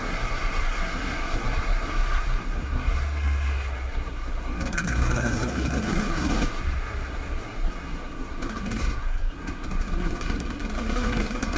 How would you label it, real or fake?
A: fake